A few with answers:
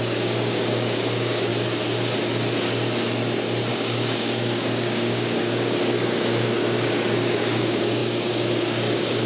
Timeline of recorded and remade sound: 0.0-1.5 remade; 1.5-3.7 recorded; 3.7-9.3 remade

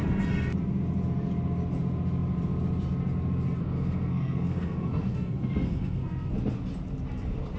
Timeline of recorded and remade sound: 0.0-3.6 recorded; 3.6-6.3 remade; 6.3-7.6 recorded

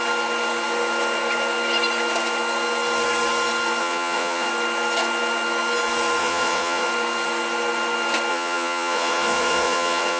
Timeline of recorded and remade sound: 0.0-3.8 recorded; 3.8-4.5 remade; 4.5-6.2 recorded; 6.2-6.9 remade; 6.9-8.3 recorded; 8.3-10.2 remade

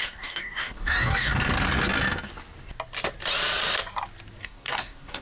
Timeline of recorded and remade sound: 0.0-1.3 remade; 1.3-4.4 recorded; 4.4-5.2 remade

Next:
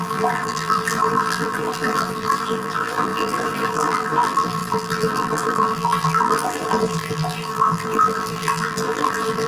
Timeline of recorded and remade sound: 0.0-9.5 remade

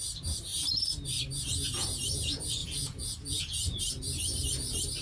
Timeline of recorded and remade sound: 0.0-2.6 recorded; 2.6-3.8 remade; 3.8-5.0 recorded

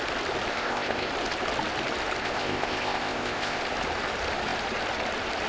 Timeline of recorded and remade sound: 0.0-0.5 recorded; 0.5-1.1 remade; 1.1-2.2 recorded; 2.2-3.6 remade; 3.6-5.5 recorded